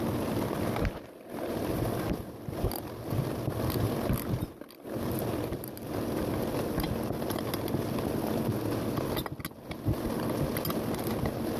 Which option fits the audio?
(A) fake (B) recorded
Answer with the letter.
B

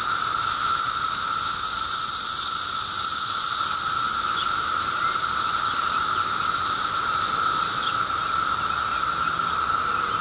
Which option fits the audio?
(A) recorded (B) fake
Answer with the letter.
A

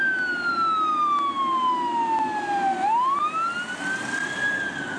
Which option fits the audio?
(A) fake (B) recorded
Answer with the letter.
B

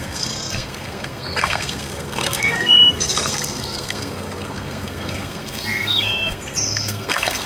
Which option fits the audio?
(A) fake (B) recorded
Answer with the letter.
A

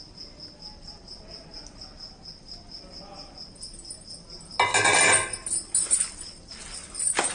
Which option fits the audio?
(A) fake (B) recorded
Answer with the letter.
B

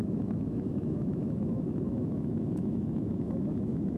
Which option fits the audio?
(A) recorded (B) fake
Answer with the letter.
B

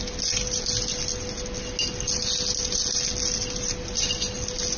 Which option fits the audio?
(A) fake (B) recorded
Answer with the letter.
B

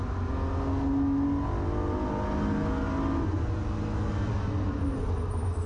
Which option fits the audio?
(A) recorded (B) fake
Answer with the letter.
A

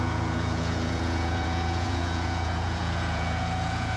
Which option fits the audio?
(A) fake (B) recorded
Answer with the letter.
A